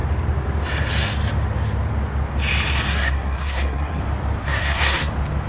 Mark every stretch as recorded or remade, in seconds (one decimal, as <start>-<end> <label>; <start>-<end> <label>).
0.0-2.9 recorded; 2.9-4.0 remade; 4.0-4.4 recorded; 4.4-5.1 remade; 5.1-5.5 recorded